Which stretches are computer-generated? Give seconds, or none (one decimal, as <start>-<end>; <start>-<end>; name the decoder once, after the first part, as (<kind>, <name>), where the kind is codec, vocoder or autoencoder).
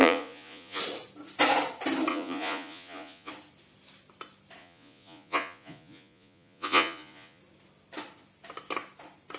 0.0-0.8 (vocoder, Vocos); 2.1-3.3; 4.6-7.4